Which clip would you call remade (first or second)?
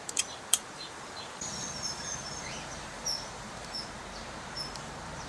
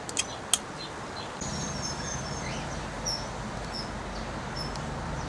first